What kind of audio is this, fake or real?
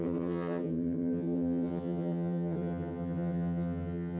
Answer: fake